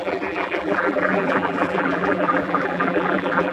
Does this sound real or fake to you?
fake